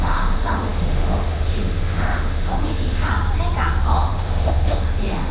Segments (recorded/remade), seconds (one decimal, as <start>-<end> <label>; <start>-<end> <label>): 0.0-3.1 remade; 3.1-3.8 recorded; 3.8-5.3 remade